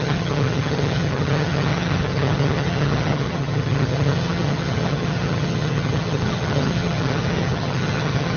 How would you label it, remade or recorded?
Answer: remade